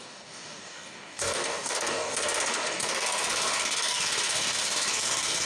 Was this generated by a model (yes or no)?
yes